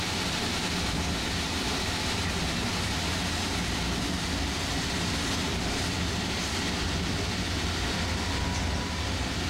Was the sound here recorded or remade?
recorded